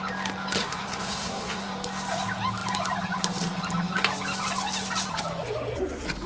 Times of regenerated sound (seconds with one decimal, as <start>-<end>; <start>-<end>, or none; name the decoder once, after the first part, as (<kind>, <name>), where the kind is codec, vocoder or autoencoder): 0.6-1.7 (codec, SNAC)